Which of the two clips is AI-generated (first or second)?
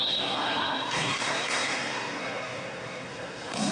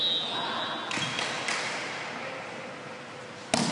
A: first